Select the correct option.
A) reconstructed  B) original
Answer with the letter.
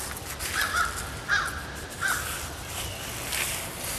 B